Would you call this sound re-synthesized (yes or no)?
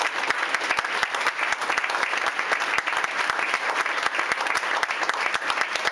no